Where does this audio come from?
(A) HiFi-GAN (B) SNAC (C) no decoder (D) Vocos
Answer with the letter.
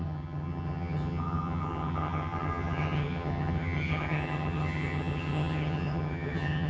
A